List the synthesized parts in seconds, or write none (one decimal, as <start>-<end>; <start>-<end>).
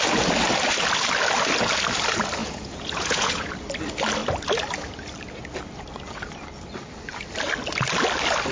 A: 2.4-3.5